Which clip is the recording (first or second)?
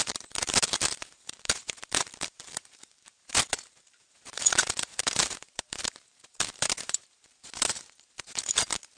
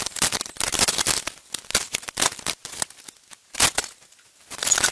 second